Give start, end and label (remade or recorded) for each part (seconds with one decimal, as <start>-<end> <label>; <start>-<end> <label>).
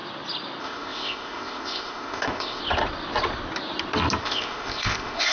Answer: 0.0-0.6 recorded; 0.6-2.6 remade; 2.6-4.2 recorded; 4.2-5.3 remade